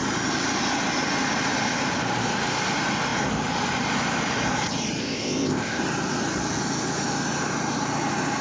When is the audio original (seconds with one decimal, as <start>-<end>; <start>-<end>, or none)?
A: 0.0-5.0; 5.8-8.4

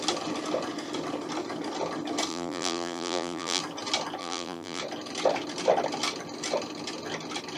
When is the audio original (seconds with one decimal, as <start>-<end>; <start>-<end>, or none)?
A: 0.0-2.3; 3.6-4.2; 4.8-7.6